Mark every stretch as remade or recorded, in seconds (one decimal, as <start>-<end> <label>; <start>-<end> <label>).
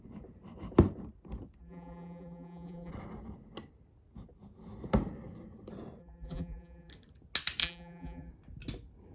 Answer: 0.0-1.6 recorded; 1.6-2.9 remade; 2.9-6.0 recorded; 6.0-6.9 remade; 6.9-7.6 recorded; 7.6-8.3 remade; 8.3-9.1 recorded